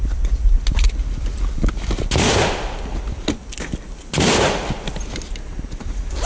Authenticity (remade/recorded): recorded